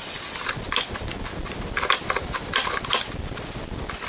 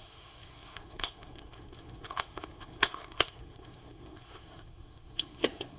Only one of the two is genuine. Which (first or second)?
first